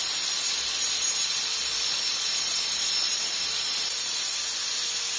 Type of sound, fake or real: real